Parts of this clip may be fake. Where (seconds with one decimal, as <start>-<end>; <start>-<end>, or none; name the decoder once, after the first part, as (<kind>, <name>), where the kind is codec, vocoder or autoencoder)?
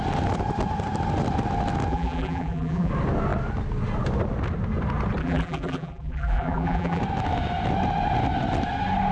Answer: 1.9-2.9 (vocoder, BigVGAN v2); 5.2-7.0